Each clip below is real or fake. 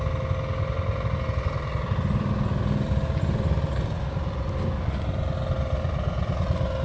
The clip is real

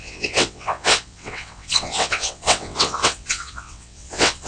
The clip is fake